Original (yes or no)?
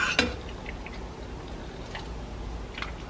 yes